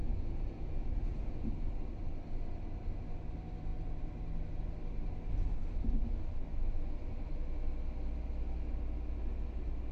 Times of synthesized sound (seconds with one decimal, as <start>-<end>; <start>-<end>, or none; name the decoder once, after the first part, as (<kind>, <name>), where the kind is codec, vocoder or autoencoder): 0.0-1.5 (vocoder, Vocos)